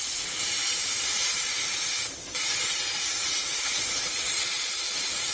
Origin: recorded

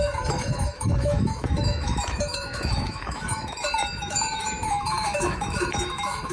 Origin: remade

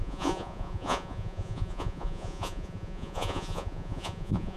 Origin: remade